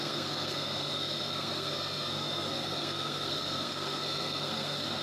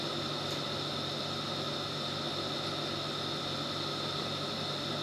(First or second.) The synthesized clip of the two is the first